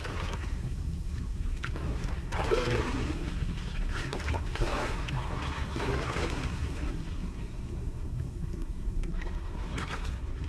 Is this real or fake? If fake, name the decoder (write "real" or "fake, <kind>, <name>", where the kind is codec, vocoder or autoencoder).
fake, codec, SNAC